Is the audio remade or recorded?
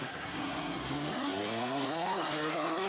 remade